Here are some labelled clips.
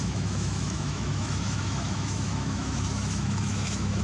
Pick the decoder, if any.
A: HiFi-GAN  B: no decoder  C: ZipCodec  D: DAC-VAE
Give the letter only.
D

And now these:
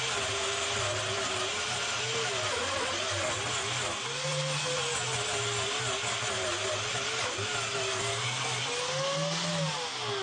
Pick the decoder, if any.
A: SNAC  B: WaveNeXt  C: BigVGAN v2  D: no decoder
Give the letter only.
D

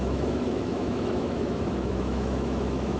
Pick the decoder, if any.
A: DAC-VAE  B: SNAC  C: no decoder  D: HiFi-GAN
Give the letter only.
A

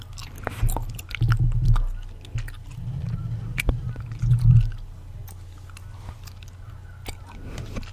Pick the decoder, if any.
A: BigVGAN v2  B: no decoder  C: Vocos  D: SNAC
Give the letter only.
B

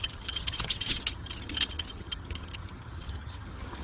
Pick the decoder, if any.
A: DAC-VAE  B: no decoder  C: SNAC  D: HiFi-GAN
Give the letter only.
D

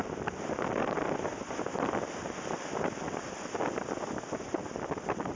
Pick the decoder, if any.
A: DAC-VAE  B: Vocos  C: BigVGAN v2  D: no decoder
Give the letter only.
C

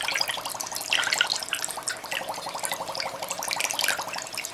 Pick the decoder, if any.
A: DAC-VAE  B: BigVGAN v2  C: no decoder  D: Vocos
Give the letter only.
C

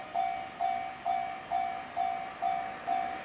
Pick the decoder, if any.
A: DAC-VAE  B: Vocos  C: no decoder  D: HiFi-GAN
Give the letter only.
C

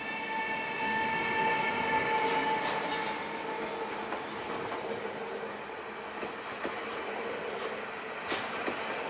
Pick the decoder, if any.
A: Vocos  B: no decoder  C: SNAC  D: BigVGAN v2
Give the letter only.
B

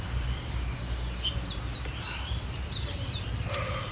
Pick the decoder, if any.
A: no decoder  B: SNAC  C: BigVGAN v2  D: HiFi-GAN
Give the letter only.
A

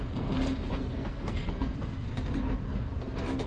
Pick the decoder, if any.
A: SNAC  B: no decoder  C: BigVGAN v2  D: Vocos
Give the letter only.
A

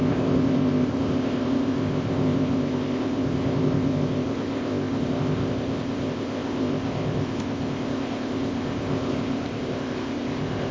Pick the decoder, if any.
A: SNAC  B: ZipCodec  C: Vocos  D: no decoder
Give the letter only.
B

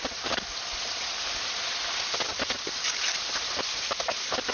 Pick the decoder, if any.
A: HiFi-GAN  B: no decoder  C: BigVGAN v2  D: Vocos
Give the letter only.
B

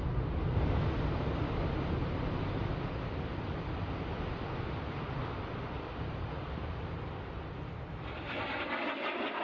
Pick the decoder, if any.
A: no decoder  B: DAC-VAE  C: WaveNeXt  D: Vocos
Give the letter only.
A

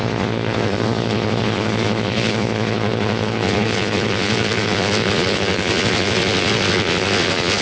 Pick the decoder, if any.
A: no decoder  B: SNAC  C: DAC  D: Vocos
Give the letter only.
D